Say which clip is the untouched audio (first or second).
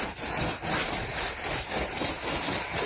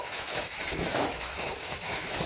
first